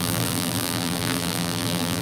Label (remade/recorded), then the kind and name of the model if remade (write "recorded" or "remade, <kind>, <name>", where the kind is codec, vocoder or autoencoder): remade, vocoder, BigVGAN v2